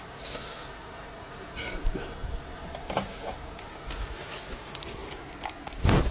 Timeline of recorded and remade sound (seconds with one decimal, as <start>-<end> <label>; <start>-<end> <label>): 0.0-6.1 recorded